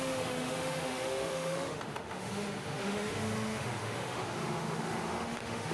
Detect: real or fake fake